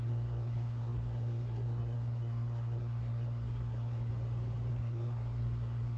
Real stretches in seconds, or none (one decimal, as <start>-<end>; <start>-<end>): 4.1-4.7

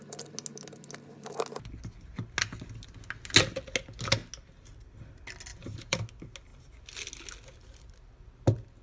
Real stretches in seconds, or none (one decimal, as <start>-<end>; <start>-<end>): 0.0-5.5; 6.0-8.8

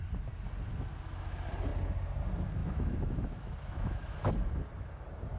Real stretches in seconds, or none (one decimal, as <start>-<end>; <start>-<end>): 0.0-2.6; 4.3-5.4

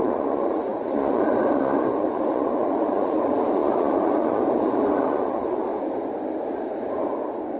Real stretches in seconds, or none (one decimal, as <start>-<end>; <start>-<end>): 5.7-7.6

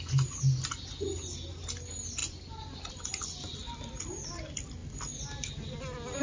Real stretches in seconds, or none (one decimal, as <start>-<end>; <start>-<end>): 0.0-6.2

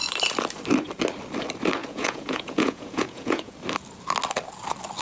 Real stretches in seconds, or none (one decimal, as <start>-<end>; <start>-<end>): 0.0-1.8; 3.5-5.0

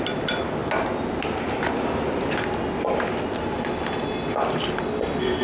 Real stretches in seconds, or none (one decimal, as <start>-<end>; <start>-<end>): 0.0-5.4